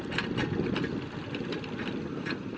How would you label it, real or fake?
real